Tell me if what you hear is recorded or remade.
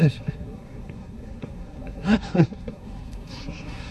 remade